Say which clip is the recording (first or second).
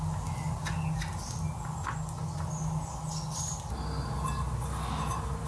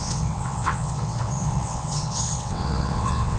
first